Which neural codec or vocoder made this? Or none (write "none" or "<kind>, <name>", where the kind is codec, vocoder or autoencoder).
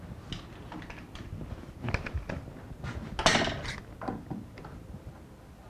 none